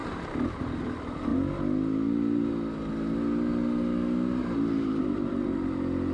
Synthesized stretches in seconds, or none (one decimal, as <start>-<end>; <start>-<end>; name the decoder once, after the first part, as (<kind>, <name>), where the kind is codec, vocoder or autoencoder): none